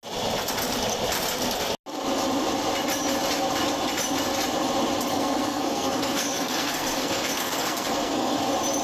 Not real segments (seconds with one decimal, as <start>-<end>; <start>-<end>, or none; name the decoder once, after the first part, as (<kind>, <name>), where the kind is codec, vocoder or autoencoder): 5.1-8.4 (codec, SNAC)

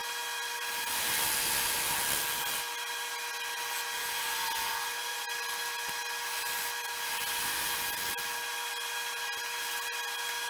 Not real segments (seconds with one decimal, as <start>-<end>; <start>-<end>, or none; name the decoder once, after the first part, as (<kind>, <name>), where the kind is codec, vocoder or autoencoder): none

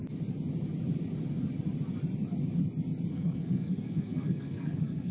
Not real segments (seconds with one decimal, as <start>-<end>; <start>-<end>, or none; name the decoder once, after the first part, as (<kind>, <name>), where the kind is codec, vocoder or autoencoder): 3.1-5.1 (codec, SNAC)